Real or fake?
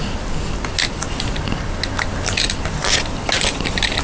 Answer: real